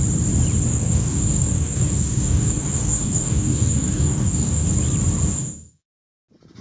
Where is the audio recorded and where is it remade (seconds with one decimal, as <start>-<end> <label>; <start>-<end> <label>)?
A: 0.0-0.7 recorded; 0.7-4.7 remade; 4.7-5.3 recorded; 5.3-5.9 remade; 5.9-6.6 recorded